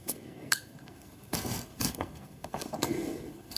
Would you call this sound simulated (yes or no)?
yes